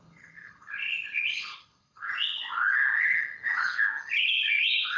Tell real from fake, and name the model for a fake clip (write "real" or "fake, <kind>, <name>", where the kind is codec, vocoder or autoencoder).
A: fake, codec, HILCodec